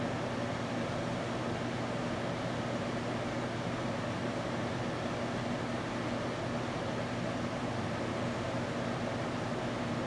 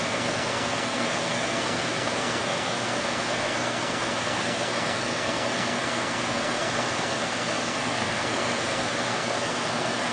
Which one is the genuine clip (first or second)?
first